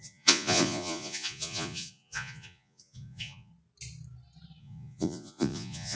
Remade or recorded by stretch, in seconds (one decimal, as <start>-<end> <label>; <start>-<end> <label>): 0.0-3.5 remade; 3.5-4.6 recorded; 4.6-5.9 remade